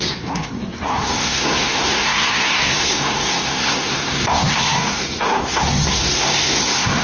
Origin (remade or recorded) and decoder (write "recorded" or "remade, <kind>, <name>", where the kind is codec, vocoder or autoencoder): remade, codec, SNAC